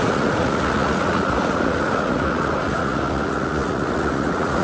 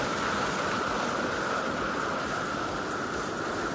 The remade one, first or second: first